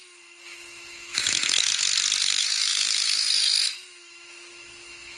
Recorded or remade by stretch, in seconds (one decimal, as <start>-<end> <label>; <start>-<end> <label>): 0.0-1.7 remade; 1.7-2.2 recorded; 2.2-5.2 remade